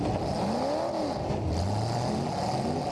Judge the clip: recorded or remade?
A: recorded